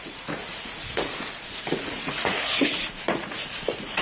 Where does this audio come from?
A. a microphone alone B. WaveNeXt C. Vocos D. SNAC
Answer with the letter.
C